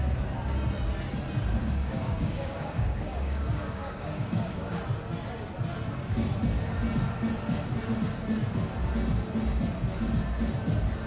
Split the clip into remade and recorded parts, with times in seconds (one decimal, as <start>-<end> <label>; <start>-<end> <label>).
0.0-1.6 recorded; 1.6-4.8 remade; 4.8-11.1 recorded